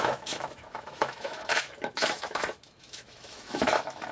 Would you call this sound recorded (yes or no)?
no